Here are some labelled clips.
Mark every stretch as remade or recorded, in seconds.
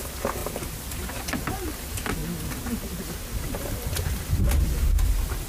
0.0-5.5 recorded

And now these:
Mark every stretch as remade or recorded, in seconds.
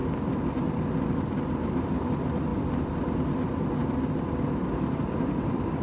0.0-5.8 recorded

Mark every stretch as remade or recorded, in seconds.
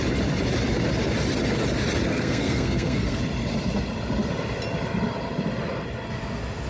0.0-2.1 recorded; 2.1-3.2 remade; 3.2-6.7 recorded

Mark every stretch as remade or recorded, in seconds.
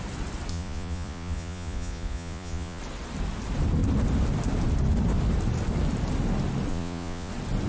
0.0-0.5 recorded; 0.5-2.8 remade; 2.8-6.7 recorded; 6.7-7.3 remade; 7.3-7.7 recorded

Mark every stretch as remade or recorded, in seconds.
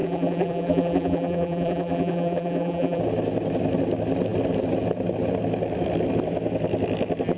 0.0-3.0 remade; 3.0-7.4 recorded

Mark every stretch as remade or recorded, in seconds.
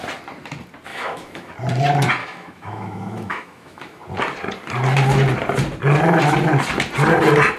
0.0-0.9 recorded; 0.9-1.5 remade; 1.5-2.2 recorded; 2.2-4.0 remade; 4.0-7.6 recorded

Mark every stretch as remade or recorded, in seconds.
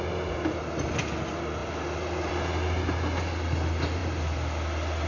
0.0-5.1 recorded